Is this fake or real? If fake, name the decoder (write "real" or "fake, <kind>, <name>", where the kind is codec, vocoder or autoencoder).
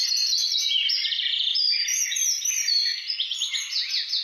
real